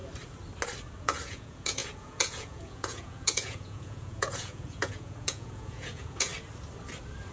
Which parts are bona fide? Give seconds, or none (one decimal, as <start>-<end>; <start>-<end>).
0.0-1.0; 6.3-7.3